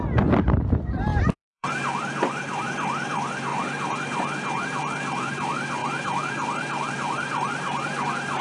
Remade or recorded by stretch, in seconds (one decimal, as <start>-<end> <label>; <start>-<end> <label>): 0.0-3.5 remade; 3.5-4.6 recorded; 4.6-5.8 remade; 5.8-6.9 recorded; 6.9-8.4 remade